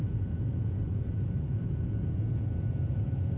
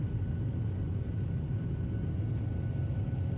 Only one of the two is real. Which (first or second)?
second